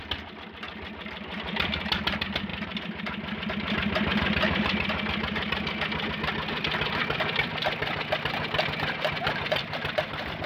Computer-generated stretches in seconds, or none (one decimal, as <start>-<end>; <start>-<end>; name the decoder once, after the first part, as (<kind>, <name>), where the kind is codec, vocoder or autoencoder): none